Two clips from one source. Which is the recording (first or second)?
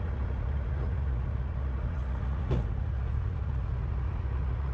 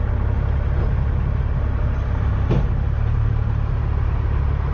second